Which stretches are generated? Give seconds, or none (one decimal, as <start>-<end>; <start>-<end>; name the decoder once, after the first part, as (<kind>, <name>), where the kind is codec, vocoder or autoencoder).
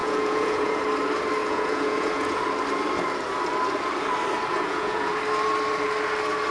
0.0-0.8 (vocoder, Vocos); 1.4-2.4; 4.5-5.2